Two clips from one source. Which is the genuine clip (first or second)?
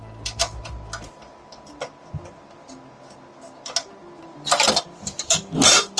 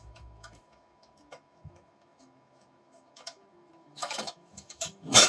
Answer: first